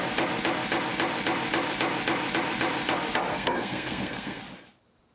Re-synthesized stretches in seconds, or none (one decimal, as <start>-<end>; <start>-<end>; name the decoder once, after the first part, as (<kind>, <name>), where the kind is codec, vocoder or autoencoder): 3.3-4.4 (codec, SNAC)